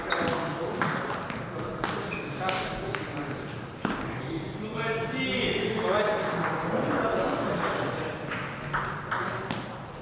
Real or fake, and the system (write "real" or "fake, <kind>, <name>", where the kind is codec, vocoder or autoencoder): real